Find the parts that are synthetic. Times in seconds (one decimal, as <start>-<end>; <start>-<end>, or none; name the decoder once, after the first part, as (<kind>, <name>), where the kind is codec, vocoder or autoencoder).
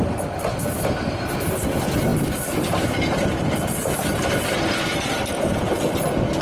none